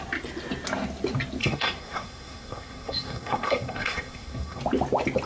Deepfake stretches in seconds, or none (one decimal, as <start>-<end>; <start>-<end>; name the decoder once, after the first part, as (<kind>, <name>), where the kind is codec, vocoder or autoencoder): 1.4-4.6 (codec, SNAC)